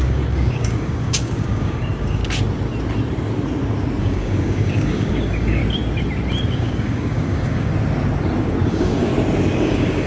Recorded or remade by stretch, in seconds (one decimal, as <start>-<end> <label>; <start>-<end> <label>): 0.0-2.2 remade; 2.2-4.0 recorded; 4.0-5.6 remade; 5.6-6.5 recorded; 6.5-7.7 remade; 7.7-8.7 recorded; 8.7-9.1 remade; 9.1-9.6 recorded; 9.6-10.1 remade